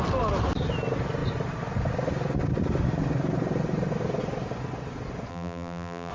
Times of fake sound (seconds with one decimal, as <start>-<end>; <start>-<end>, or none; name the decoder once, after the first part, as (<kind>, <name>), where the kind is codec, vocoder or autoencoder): 5.3-6.1 (vocoder, BigVGAN v2)